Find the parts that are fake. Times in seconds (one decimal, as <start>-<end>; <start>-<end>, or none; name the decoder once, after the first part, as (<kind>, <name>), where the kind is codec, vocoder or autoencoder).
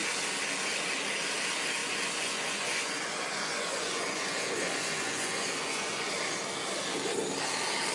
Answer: 1.8-6.1 (vocoder, Vocos)